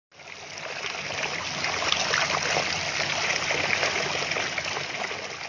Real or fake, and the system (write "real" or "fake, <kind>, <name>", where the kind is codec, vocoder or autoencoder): real